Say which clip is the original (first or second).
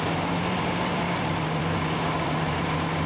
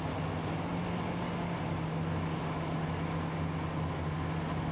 second